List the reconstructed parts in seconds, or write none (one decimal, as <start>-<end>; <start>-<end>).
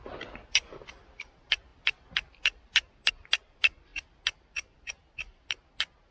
none